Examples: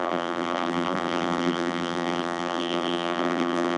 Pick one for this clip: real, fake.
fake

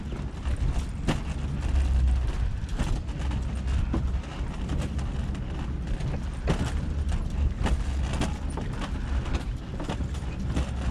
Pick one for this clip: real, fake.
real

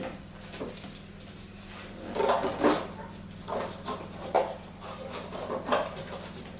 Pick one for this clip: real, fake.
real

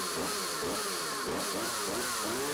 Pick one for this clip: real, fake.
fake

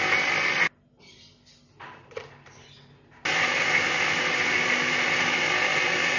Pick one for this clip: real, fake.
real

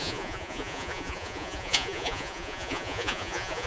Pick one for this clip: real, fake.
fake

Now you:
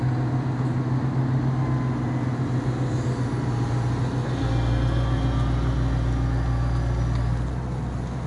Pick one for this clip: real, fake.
real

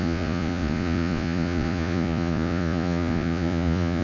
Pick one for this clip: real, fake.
fake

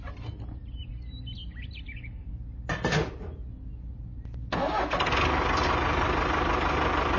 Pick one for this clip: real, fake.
real